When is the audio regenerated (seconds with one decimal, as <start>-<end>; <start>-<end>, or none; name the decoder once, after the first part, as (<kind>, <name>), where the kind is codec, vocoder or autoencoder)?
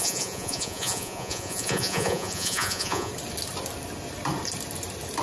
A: 0.0-3.1 (vocoder, Vocos)